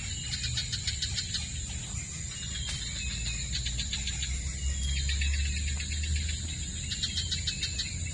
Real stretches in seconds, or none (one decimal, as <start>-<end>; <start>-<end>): 0.0-8.1